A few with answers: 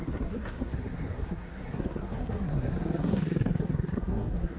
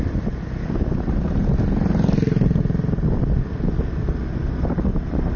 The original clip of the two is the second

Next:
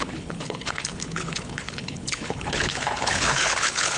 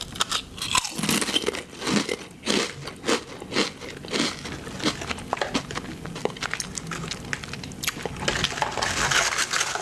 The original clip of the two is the second